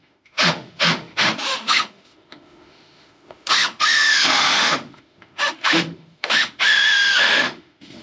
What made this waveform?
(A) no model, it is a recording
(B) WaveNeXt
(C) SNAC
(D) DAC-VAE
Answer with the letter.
D